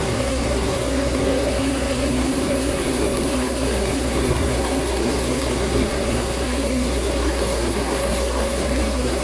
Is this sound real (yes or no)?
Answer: no